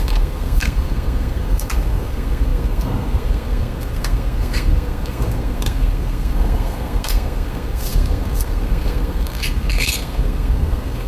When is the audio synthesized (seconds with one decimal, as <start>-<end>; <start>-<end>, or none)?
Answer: 0.0-11.1